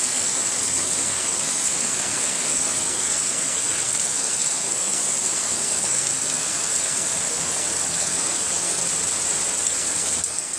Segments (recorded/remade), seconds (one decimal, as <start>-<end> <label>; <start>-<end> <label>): 0.0-8.8 remade; 8.8-9.6 recorded; 9.6-10.6 remade